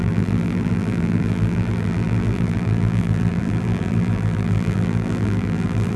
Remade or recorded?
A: remade